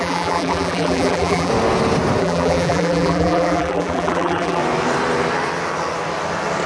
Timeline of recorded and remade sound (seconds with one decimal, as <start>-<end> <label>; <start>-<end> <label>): 0.0-1.5 remade; 1.5-2.2 recorded; 2.2-4.6 remade; 4.6-6.7 recorded